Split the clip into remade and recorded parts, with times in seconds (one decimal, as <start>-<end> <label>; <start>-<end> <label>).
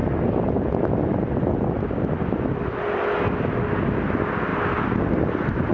0.0-5.7 recorded